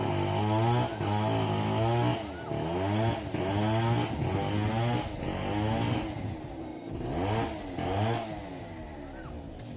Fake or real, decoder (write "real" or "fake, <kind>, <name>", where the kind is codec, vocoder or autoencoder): real